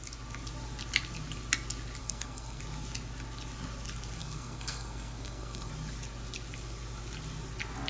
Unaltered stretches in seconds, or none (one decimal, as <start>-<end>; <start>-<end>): 0.0-2.0; 2.6-4.2; 5.7-7.9